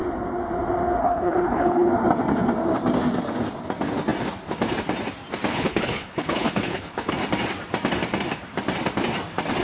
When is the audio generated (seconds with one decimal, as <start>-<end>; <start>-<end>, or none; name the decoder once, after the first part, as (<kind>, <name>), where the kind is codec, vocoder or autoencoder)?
1.0-1.9 (codec, HILCodec); 5.5-7.1